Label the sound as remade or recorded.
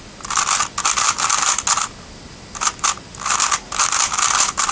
recorded